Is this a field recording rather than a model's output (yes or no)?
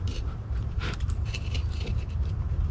no